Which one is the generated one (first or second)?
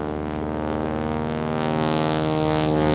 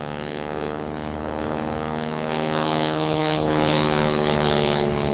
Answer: second